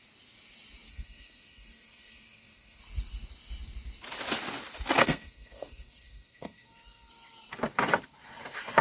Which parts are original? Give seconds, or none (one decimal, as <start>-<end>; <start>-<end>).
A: 0.0-0.9; 2.8-5.0; 7.1-8.8